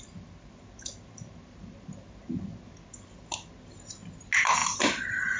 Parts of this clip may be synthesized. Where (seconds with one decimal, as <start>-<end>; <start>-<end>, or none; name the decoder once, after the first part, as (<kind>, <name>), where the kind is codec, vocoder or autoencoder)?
none